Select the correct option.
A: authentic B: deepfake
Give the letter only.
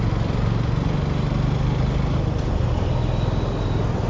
A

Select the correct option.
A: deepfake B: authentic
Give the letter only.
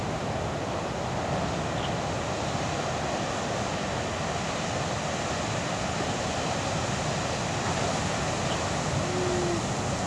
B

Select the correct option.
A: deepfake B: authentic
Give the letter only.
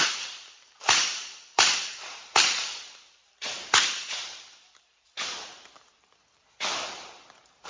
A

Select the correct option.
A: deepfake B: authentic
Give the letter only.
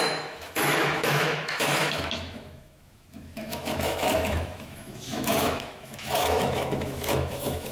A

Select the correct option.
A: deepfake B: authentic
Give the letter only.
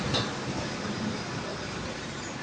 B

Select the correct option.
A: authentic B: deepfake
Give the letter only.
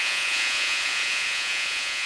B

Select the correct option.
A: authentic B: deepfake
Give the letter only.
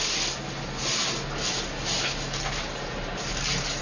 A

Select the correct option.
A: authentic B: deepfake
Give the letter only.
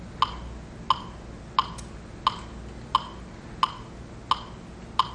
A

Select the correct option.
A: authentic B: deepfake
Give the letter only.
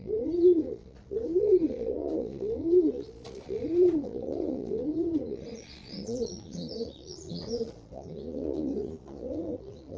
B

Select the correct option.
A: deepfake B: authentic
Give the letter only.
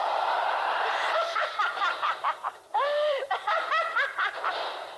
A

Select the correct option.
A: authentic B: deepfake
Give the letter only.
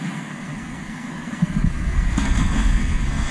B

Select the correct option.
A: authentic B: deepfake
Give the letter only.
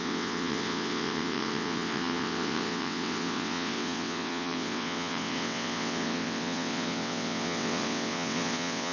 B